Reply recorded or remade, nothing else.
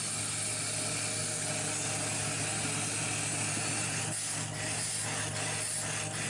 recorded